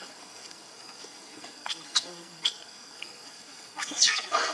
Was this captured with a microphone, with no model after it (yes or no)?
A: no